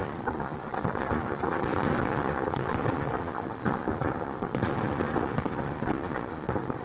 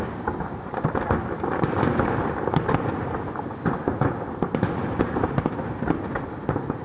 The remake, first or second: first